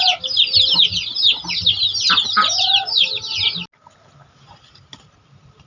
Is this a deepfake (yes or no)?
no